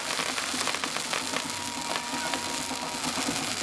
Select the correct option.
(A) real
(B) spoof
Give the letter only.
A